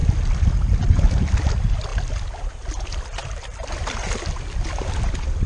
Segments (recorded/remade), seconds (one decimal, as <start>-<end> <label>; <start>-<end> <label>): 0.0-5.5 recorded

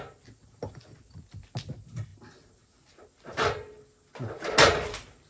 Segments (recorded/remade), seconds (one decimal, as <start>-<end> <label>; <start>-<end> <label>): 0.0-5.3 recorded

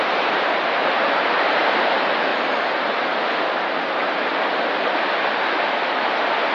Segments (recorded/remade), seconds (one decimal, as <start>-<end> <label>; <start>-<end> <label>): 0.0-2.3 remade; 2.3-6.5 recorded

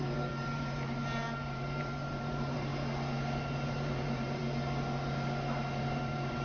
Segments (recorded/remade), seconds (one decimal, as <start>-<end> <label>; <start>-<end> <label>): 0.0-2.7 remade; 2.7-3.4 recorded; 3.4-4.4 remade; 4.4-5.8 recorded; 5.8-6.4 remade

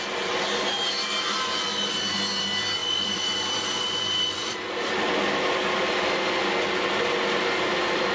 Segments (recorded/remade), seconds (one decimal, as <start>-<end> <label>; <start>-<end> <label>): 0.0-2.8 recorded; 2.8-4.9 remade; 4.9-8.1 recorded

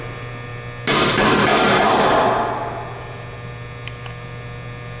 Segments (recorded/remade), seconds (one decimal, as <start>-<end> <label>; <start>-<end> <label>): 0.0-5.0 recorded

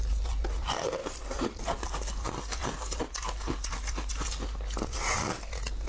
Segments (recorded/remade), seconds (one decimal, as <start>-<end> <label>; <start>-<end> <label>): 0.0-1.0 recorded; 1.0-1.6 remade; 1.6-5.9 recorded

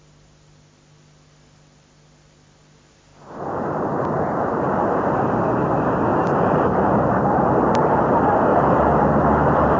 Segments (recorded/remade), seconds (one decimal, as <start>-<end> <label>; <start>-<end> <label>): 0.0-3.1 recorded; 3.1-4.8 remade; 4.8-6.1 recorded; 6.1-8.0 remade; 8.0-8.5 recorded; 8.5-9.8 remade